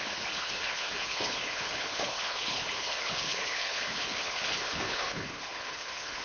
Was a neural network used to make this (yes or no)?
yes